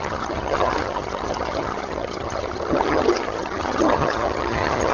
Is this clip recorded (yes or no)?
no